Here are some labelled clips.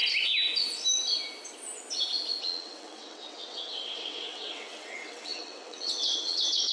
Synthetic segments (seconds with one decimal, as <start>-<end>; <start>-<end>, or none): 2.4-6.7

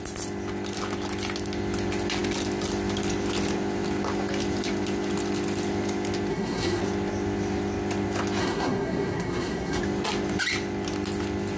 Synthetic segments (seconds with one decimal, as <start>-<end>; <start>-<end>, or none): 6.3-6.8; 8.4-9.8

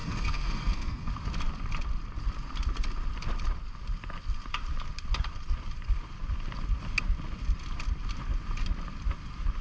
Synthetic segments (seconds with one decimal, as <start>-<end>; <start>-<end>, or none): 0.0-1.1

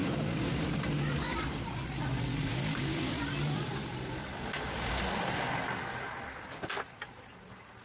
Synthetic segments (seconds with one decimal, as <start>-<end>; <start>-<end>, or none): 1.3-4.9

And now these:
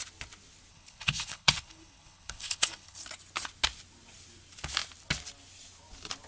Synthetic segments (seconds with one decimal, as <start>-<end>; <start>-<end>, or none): 0.7-3.0

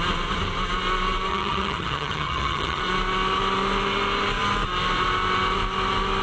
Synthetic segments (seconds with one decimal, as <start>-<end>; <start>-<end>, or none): 1.3-2.8

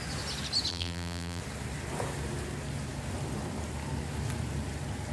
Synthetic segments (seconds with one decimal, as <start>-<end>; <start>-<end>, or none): 0.7-1.4

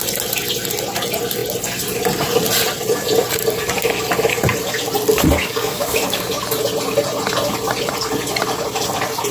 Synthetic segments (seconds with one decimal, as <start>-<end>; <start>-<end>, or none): 5.4-6.3